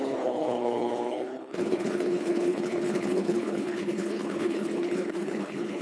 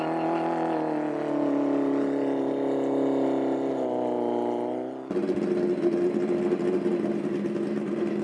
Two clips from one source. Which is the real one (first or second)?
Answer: second